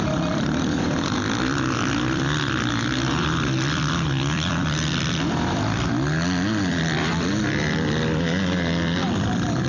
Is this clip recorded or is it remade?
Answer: remade